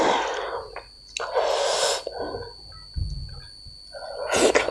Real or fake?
real